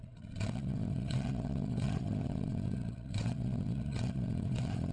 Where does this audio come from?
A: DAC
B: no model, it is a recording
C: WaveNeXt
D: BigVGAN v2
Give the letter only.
C